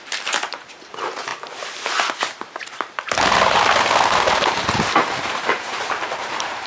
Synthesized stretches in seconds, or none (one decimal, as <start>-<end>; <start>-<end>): 0.0-1.3; 2.2-3.6; 5.3-6.7